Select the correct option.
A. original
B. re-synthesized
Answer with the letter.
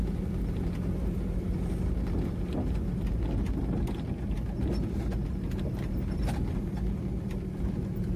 A